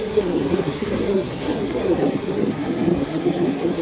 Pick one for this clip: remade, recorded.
remade